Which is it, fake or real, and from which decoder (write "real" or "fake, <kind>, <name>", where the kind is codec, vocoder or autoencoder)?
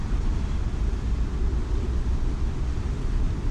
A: real